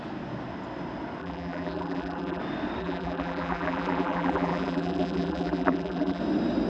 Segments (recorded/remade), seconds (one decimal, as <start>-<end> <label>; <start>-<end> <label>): 0.0-1.2 recorded; 1.2-2.4 remade; 2.4-2.8 recorded; 2.8-6.2 remade; 6.2-6.7 recorded

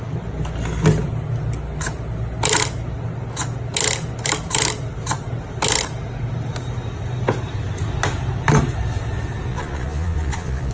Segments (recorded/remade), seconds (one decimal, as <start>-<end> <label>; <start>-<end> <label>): 0.0-9.5 recorded; 9.5-10.7 remade

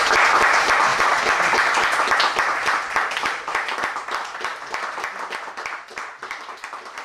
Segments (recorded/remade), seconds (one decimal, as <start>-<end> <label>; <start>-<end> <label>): 0.0-2.6 recorded; 2.6-3.7 remade; 3.7-4.5 recorded; 4.5-5.4 remade; 5.4-5.9 recorded; 5.9-6.5 remade; 6.5-7.0 recorded

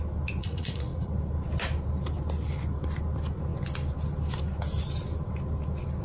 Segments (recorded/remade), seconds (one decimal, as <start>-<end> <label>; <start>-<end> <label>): 0.0-0.4 recorded; 0.4-1.1 remade; 1.1-6.0 recorded